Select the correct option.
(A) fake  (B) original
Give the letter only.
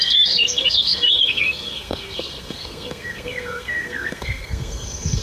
A